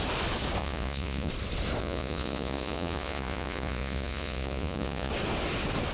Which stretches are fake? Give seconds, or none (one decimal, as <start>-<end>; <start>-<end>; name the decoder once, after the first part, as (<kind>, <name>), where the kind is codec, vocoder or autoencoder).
0.6-1.3 (vocoder, Vocos); 1.8-5.1